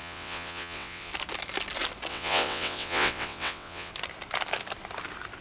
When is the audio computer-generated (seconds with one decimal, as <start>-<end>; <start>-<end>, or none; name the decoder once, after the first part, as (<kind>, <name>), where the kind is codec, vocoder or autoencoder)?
0.0-1.1 (vocoder, WaveNeXt); 2.1-3.9